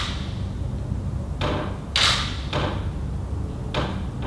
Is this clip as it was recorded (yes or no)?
yes